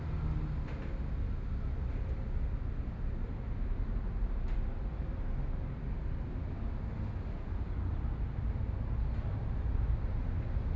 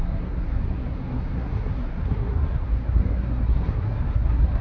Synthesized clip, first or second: second